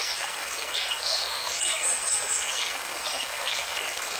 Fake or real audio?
fake